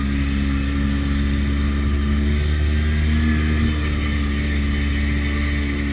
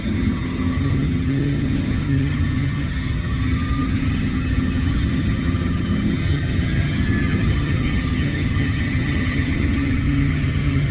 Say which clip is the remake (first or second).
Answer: second